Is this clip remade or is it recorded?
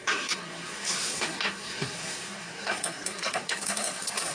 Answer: remade